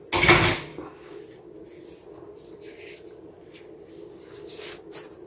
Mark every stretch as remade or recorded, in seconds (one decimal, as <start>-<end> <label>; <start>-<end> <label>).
0.0-0.7 recorded; 0.7-1.2 remade; 1.2-5.3 recorded

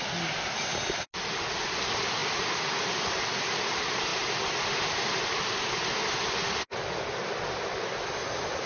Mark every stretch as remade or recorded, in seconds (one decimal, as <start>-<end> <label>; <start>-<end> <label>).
0.0-8.7 recorded

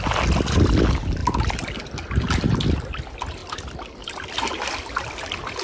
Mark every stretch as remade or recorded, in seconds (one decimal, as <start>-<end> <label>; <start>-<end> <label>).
0.0-5.6 recorded

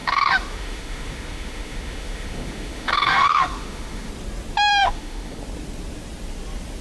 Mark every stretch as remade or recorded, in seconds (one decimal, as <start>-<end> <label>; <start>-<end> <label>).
0.0-4.1 remade; 4.1-4.8 recorded; 4.8-5.4 remade; 5.4-6.8 recorded

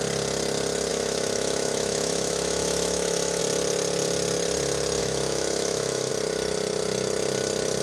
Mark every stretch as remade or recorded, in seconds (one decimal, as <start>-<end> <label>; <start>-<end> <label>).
0.0-0.9 recorded; 0.9-3.4 remade; 3.4-5.0 recorded; 5.0-6.1 remade; 6.1-7.8 recorded

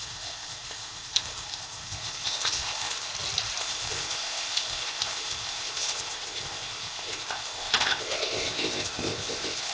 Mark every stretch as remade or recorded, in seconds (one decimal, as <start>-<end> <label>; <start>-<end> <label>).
0.0-3.1 remade; 3.1-3.6 recorded; 3.6-9.7 remade

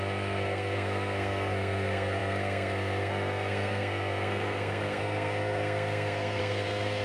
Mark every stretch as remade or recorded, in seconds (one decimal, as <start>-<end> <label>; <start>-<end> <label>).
0.0-7.0 remade

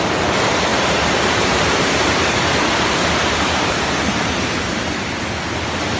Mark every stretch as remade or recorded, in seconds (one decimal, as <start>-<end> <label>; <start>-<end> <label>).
0.0-0.7 recorded; 0.7-4.3 remade; 4.3-6.0 recorded